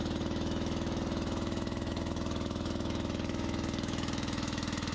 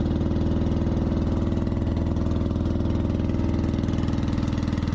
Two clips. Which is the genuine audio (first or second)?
second